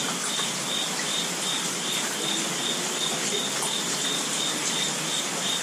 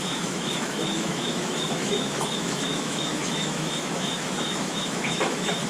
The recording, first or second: first